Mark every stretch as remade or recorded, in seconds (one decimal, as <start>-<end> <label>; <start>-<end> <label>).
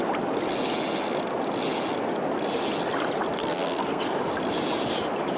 0.0-3.4 recorded; 3.4-4.0 remade; 4.0-5.4 recorded